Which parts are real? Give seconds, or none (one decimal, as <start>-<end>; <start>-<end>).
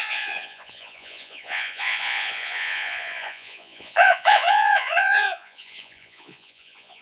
none